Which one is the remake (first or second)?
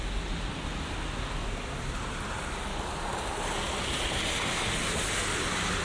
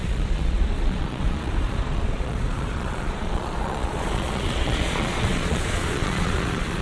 second